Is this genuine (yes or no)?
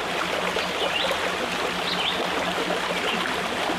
yes